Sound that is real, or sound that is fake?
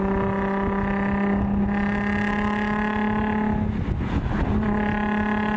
real